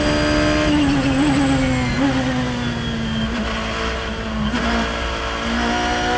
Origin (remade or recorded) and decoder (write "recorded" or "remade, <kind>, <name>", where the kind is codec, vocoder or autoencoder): recorded